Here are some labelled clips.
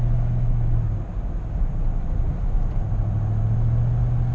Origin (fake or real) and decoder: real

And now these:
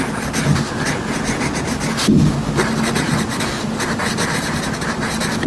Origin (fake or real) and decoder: real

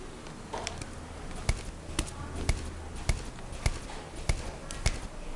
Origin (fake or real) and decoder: real